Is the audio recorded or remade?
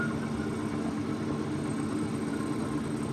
recorded